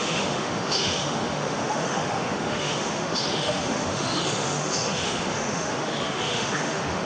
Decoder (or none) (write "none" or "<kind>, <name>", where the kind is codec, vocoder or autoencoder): autoencoder, DAC-VAE